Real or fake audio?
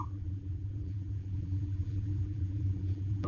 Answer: fake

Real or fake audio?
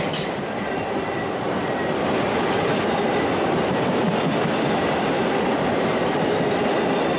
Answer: real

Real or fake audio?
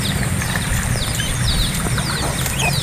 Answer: real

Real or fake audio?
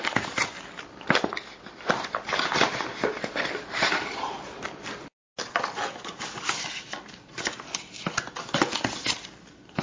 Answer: real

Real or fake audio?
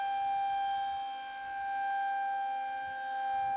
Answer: real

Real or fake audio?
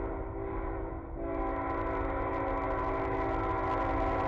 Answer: real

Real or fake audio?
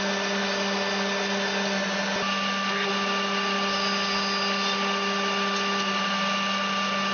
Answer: real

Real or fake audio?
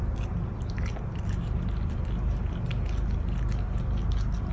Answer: real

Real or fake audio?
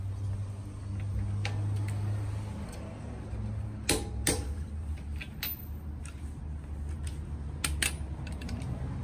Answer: real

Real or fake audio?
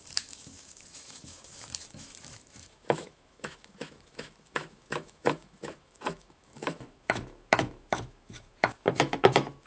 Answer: fake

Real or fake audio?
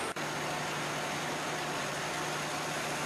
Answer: real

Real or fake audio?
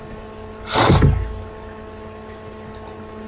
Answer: real